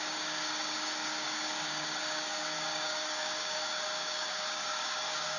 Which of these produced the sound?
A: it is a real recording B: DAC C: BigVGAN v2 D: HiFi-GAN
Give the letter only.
B